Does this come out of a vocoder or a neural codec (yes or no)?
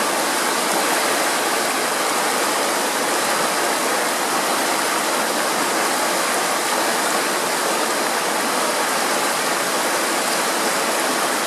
no